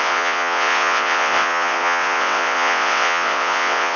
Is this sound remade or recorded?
remade